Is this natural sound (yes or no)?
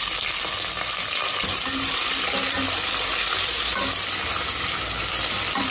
yes